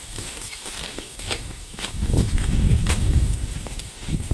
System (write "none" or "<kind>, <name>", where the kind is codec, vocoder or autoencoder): codec, DAC